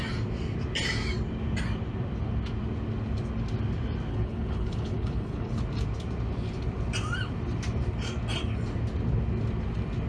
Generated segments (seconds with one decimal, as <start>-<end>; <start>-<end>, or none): 4.1-5.6